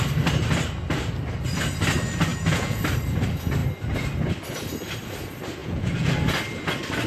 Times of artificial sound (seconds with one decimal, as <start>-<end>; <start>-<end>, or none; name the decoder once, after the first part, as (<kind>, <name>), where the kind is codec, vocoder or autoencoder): 2.3-2.8 (vocoder, Vocos); 5.6-6.1